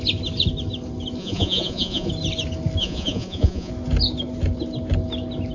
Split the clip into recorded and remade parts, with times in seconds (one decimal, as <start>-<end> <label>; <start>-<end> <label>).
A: 0.0-1.2 recorded; 1.2-2.1 remade; 2.1-2.8 recorded; 2.8-3.7 remade; 3.7-5.5 recorded